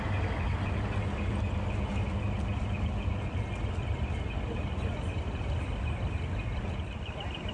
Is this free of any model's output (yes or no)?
yes